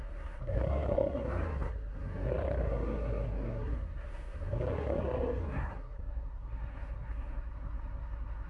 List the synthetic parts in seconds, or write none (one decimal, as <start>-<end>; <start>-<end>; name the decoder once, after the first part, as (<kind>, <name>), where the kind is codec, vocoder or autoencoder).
0.0-8.5 (codec, SNAC)